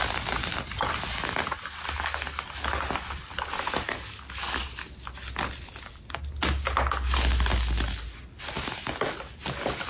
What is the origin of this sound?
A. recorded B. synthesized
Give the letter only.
A